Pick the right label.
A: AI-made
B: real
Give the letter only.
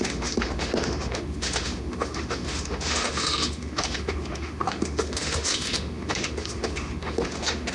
A